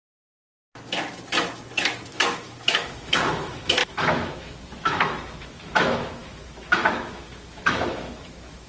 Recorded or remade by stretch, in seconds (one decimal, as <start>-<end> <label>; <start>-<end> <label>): 0.0-0.4 remade; 0.4-2.1 recorded; 2.1-8.7 remade